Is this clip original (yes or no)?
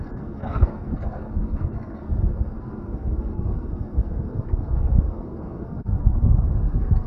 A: no